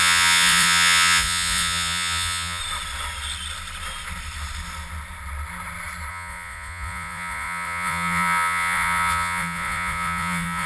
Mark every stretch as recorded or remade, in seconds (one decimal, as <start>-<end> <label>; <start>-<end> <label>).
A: 0.0-2.6 remade; 2.6-6.1 recorded; 6.1-10.7 remade